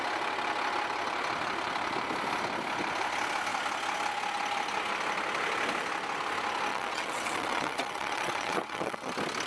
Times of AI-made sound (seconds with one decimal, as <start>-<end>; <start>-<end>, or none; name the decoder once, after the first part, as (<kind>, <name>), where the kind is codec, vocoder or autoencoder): 6.7-9.1 (vocoder, WaveNeXt)

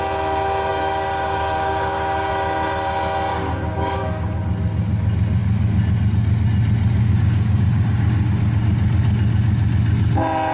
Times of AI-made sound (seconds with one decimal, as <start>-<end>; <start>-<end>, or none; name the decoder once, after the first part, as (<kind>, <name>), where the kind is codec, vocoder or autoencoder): 0.7-2.3 (codec, DAC); 3.3-4.4; 7.0-8.6

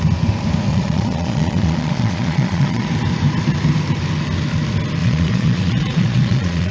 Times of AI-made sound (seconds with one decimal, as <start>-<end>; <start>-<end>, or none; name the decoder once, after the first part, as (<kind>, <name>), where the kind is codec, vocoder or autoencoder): 0.7-2.9 (vocoder, Vocos); 5.0-6.7